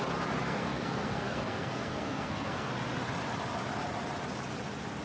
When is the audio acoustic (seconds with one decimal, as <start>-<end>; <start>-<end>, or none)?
0.0-0.4; 2.7-5.0

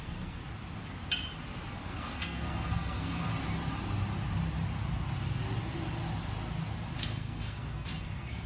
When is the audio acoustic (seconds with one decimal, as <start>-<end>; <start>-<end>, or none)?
0.4-1.7; 3.3-7.0

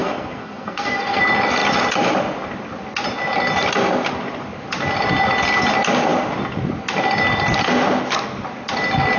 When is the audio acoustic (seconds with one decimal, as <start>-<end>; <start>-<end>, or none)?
1.2-9.2

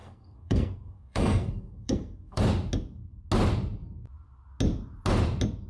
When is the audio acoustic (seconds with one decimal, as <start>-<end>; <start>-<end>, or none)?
2.4-5.7

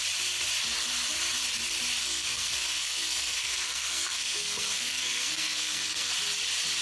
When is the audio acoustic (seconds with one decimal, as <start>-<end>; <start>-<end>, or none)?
0.0-2.0; 6.1-6.8

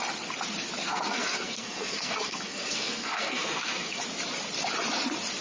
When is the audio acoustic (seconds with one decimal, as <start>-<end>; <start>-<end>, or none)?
0.0-0.8; 4.0-5.4

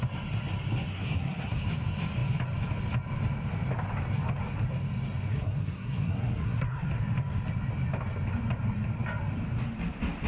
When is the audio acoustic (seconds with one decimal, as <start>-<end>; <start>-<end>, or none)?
0.0-0.9; 1.6-5.3; 6.9-10.3

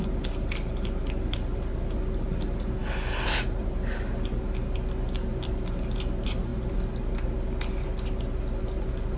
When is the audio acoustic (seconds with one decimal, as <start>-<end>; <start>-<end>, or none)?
0.0-9.2